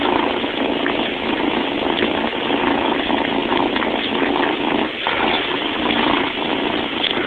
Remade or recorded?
recorded